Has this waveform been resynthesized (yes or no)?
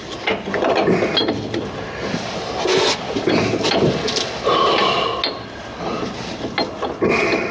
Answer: no